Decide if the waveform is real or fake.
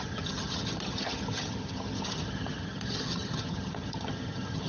fake